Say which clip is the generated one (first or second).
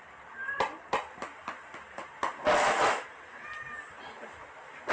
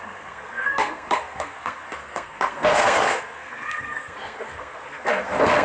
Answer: second